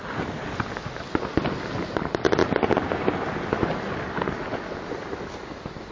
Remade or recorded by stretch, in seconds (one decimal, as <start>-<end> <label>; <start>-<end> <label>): 0.0-5.9 recorded